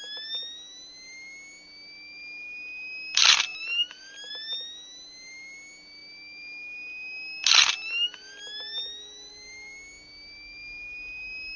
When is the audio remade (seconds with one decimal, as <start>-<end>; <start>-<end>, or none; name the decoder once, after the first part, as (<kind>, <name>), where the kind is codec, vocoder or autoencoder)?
3.5-4.3 (vocoder, BigVGAN v2)